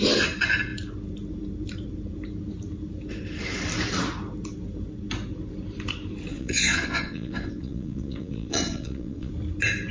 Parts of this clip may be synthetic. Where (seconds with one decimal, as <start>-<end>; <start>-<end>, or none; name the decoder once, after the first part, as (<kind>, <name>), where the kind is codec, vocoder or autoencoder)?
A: 6.3-9.3 (vocoder, Vocos)